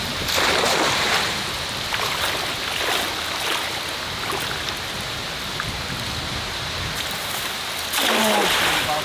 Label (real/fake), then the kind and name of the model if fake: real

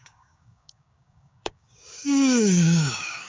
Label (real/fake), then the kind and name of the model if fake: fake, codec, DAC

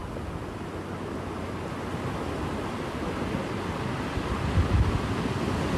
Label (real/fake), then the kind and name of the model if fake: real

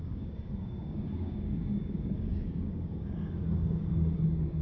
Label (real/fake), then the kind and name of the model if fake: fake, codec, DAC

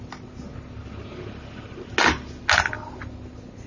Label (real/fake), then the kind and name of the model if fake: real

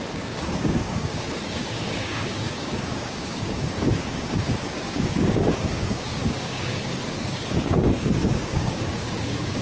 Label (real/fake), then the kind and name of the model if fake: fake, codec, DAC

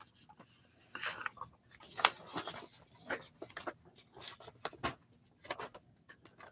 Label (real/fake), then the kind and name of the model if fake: real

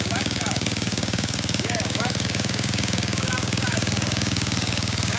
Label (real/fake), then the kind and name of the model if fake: fake, codec, DAC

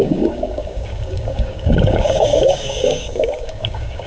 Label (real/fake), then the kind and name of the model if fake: fake, codec, DAC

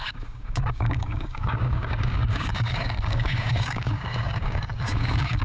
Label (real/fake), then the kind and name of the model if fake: fake, codec, DAC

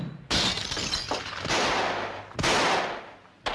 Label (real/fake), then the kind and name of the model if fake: real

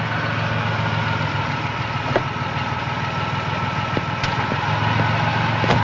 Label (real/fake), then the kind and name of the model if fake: real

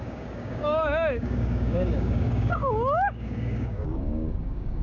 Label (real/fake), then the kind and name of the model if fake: fake, codec, DAC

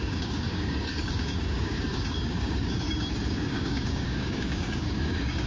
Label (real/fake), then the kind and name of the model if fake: fake, codec, DAC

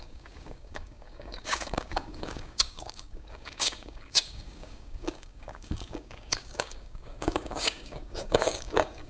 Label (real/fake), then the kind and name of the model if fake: fake, codec, DAC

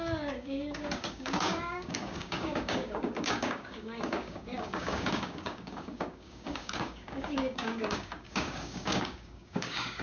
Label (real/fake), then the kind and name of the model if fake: fake, codec, DAC